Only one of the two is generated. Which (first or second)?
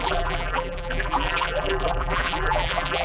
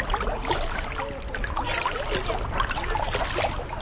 first